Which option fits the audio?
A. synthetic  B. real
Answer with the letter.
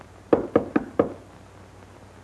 B